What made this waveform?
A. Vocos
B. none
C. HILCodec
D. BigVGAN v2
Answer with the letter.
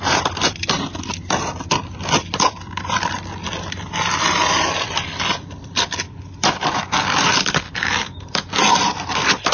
D